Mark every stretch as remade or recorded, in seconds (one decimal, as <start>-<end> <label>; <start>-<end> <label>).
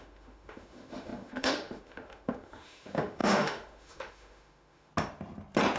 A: 0.0-4.9 remade; 4.9-5.8 recorded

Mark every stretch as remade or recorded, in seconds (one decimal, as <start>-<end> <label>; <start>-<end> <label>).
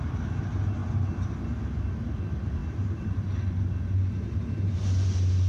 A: 0.0-2.6 recorded; 2.6-3.3 remade; 3.3-5.5 recorded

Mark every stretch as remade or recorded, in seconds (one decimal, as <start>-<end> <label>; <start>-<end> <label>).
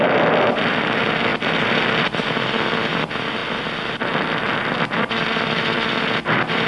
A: 0.0-6.7 recorded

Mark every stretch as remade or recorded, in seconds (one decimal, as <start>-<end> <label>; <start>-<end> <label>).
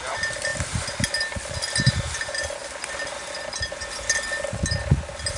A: 0.0-5.4 recorded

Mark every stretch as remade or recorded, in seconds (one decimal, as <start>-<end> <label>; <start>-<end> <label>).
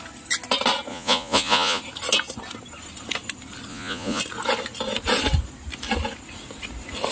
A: 0.0-0.9 recorded; 0.9-1.8 remade; 1.8-3.7 recorded; 3.7-4.2 remade; 4.2-7.1 recorded